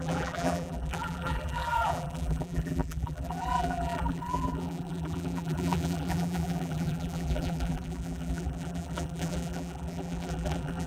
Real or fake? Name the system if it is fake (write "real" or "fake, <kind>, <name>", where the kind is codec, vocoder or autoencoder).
fake, vocoder, BigVGAN v2